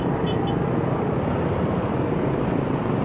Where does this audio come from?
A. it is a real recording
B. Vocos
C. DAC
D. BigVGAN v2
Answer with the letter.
A